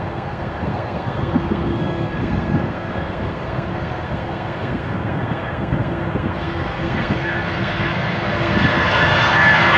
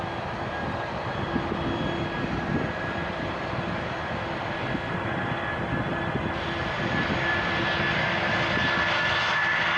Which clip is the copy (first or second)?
first